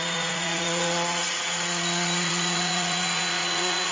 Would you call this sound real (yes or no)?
no